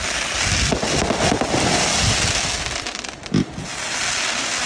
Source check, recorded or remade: recorded